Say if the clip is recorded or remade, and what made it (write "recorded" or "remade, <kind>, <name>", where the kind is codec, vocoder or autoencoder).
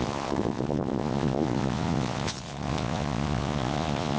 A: remade, vocoder, Vocos